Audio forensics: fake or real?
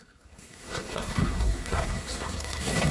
fake